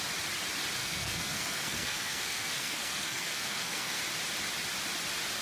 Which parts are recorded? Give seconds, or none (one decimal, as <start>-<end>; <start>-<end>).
0.0-0.8; 4.0-5.4